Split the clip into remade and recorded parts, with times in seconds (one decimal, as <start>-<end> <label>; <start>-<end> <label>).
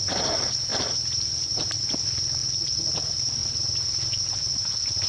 0.0-0.7 recorded; 0.7-1.8 remade; 1.8-5.1 recorded